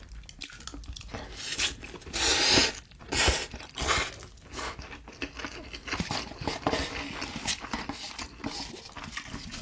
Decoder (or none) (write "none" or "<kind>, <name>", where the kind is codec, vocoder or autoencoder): none